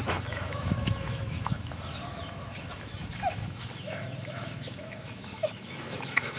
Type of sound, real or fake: fake